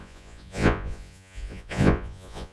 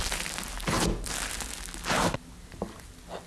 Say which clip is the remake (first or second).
first